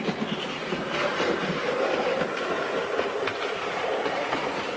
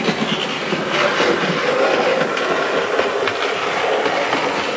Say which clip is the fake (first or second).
first